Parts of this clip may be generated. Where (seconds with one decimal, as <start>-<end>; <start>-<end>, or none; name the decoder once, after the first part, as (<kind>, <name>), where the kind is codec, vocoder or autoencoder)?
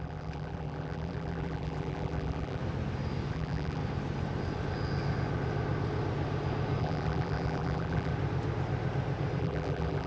0.0-2.6 (vocoder, BigVGAN v2); 3.3-3.8; 6.8-8.1; 9.4-10.1